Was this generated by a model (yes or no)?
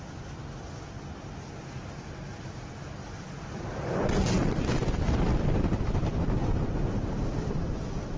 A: no